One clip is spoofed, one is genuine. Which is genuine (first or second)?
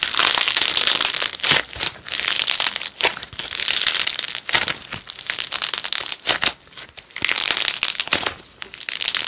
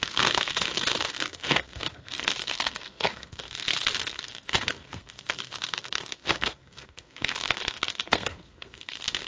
first